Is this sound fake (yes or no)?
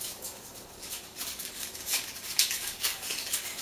yes